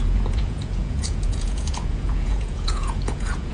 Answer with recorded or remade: remade